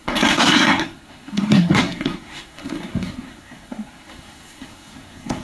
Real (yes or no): no